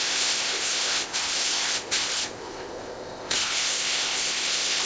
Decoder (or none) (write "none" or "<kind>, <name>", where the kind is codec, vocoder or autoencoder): codec, ZipCodec